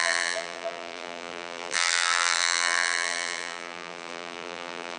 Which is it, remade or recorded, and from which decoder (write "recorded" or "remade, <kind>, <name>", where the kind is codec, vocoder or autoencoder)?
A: remade, vocoder, BigVGAN v2